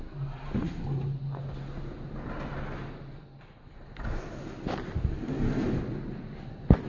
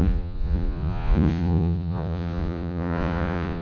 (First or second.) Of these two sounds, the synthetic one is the second